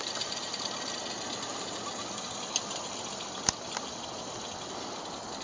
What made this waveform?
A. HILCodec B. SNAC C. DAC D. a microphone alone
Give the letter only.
D